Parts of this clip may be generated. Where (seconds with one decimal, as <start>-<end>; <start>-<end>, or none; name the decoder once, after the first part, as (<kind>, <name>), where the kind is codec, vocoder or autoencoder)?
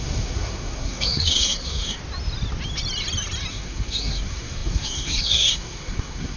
0.0-2.0 (codec, SNAC); 3.5-6.4